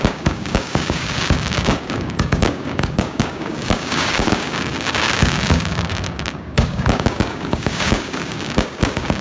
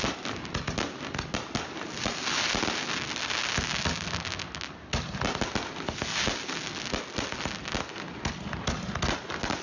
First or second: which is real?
second